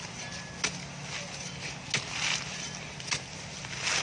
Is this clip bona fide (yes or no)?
yes